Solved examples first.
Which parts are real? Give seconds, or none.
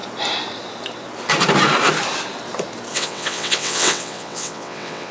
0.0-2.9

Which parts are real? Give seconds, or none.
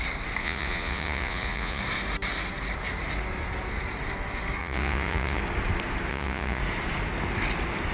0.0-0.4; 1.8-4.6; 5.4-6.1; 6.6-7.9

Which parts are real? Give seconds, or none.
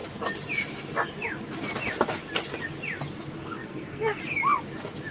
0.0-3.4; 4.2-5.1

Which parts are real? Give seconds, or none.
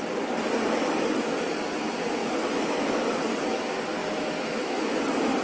0.0-2.2; 3.1-4.0; 5.0-5.4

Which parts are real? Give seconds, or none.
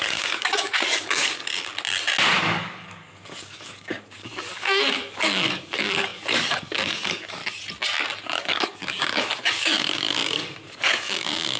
1.7-2.4; 7.4-8.2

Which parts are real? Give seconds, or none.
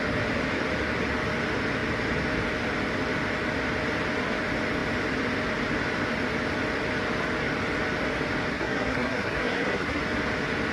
0.0-8.5; 10.0-10.7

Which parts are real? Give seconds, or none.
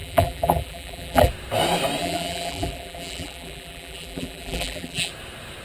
1.3-2.0; 5.1-5.6